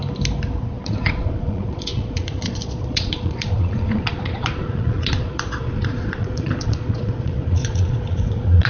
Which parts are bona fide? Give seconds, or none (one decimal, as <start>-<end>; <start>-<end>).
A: 0.0-0.6